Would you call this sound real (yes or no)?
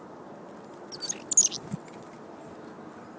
yes